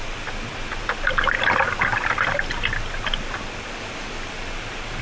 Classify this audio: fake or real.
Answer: real